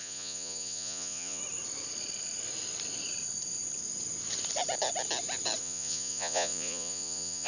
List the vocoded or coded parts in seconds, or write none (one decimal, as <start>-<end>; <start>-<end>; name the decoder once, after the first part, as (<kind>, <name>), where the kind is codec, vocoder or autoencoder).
0.0-1.4 (vocoder, Vocos); 5.6-7.5